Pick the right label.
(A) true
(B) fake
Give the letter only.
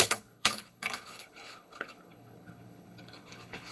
B